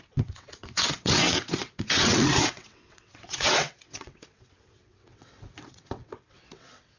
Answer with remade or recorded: remade